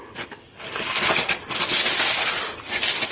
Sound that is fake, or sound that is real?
real